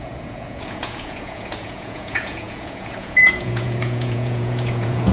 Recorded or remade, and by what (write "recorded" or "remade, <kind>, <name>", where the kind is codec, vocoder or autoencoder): remade, vocoder, Vocos